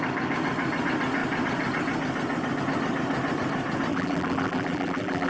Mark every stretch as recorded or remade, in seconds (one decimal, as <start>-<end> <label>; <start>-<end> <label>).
0.0-3.9 recorded; 3.9-5.3 remade